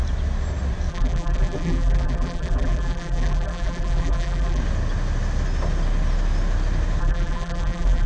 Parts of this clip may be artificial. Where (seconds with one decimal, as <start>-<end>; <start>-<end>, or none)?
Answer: 0.9-4.6; 7.0-8.1